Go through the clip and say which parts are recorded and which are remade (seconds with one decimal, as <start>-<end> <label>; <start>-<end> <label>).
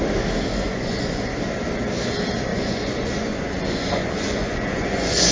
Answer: 0.0-0.5 recorded; 0.5-1.3 remade; 1.3-2.5 recorded; 2.5-5.3 remade